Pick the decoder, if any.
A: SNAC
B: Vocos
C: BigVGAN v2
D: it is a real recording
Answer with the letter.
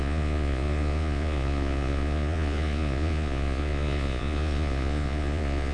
B